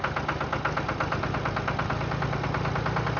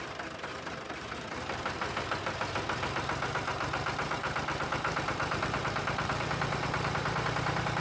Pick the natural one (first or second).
first